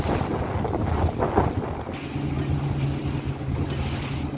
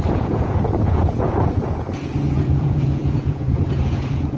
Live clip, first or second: first